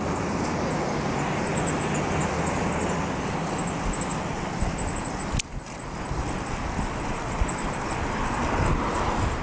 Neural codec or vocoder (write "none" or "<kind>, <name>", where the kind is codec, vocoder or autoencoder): none